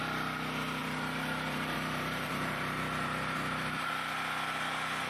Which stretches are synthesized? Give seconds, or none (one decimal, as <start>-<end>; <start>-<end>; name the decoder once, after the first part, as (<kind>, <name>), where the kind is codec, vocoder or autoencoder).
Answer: 0.8-3.9 (vocoder, BigVGAN v2)